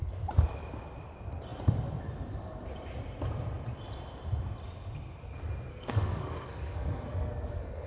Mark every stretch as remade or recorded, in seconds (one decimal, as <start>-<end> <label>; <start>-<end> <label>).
0.0-5.7 recorded; 5.7-7.9 remade